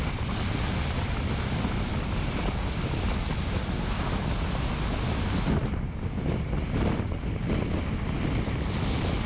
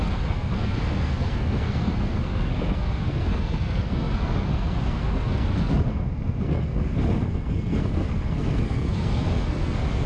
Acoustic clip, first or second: first